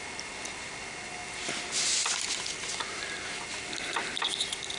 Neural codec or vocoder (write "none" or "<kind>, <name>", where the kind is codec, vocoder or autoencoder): none